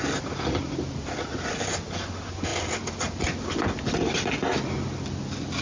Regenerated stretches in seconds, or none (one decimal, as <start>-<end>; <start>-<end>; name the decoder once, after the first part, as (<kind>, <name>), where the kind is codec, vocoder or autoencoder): none